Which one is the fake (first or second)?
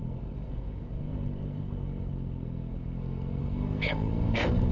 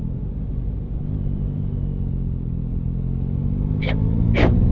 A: first